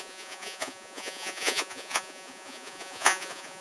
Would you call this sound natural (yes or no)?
no